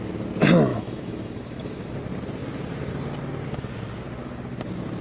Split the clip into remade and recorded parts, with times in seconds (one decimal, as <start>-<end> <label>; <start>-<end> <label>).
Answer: 0.0-0.7 recorded; 0.7-1.9 remade; 1.9-5.0 recorded